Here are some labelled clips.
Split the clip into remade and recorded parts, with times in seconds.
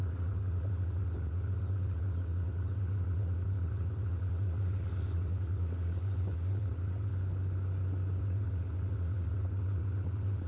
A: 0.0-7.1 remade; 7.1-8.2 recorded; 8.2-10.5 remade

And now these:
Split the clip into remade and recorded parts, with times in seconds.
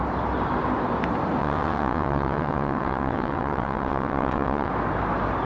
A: 0.0-1.4 recorded; 1.4-4.7 remade; 4.7-5.5 recorded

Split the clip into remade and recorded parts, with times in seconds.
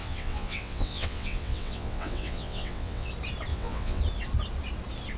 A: 0.0-3.1 remade; 3.1-3.5 recorded; 3.5-4.0 remade; 4.0-5.2 recorded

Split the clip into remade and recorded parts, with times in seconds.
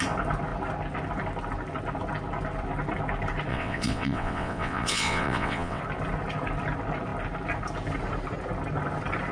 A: 0.0-3.5 recorded; 3.5-5.8 remade; 5.8-9.3 recorded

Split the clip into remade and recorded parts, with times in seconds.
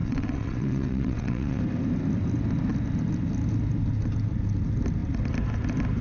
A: 0.0-1.6 remade; 1.6-6.0 recorded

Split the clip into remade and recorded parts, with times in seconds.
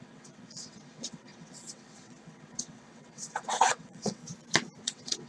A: 0.0-4.2 remade; 4.2-4.8 recorded; 4.8-5.3 remade